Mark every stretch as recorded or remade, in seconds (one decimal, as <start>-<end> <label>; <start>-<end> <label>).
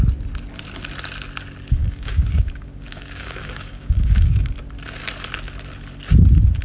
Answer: 0.0-1.8 recorded; 1.8-4.5 remade; 4.5-6.6 recorded